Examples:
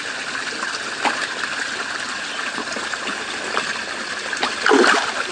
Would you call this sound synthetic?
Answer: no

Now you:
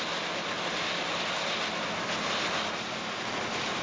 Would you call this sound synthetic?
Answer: no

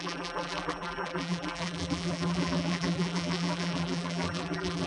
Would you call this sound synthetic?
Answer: yes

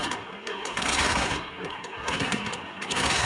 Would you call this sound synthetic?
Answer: yes